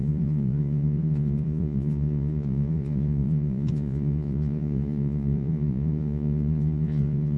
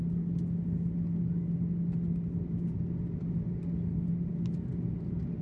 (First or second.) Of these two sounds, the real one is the second